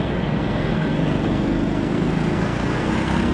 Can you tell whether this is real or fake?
fake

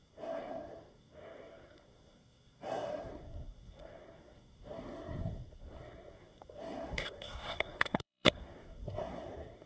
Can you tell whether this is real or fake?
fake